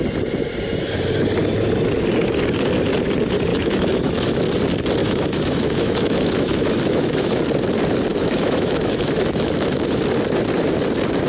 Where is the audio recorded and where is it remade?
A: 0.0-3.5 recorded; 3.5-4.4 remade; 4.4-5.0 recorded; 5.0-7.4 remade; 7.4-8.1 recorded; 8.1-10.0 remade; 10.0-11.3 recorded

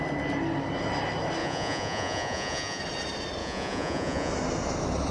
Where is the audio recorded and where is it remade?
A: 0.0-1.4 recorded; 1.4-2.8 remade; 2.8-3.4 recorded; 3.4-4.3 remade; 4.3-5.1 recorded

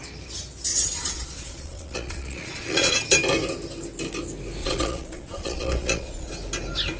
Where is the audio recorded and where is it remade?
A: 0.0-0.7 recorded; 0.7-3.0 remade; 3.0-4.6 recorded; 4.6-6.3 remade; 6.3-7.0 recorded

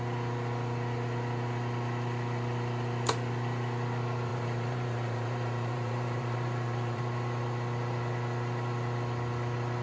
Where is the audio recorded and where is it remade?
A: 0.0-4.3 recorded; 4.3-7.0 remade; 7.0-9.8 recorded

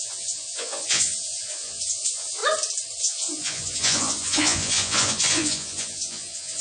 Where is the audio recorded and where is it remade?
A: 0.0-2.4 remade; 2.4-3.0 recorded; 3.0-6.6 remade